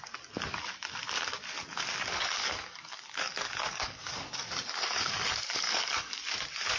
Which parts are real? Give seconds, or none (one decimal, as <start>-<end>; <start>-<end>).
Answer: 0.0-2.1; 6.2-6.8